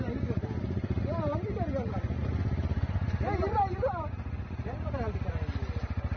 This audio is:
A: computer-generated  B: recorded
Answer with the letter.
B